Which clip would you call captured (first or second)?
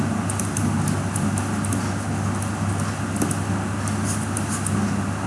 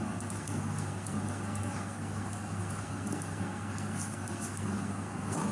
first